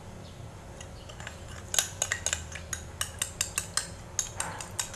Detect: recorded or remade recorded